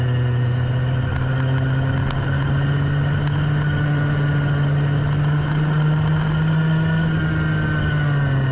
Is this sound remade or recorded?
recorded